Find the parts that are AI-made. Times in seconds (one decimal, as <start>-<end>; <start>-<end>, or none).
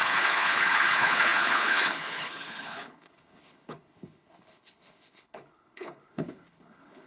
0.0-7.1